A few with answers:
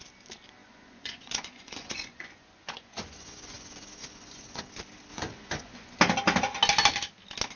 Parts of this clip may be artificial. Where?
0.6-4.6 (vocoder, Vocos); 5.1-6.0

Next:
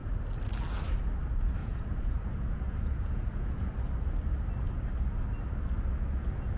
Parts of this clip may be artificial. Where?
1.6-3.7 (vocoder, Vocos)